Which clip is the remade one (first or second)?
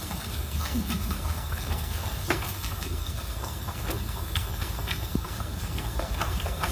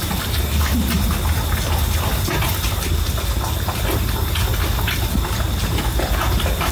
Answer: first